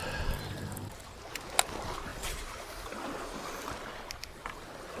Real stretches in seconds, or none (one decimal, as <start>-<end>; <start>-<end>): 1.1-2.1; 2.7-4.4